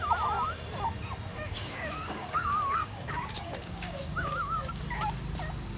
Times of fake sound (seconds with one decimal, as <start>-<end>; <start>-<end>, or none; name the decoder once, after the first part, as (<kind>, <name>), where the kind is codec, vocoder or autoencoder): 1.3-4.8 (codec, DAC)